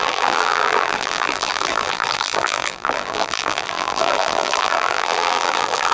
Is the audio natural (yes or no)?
no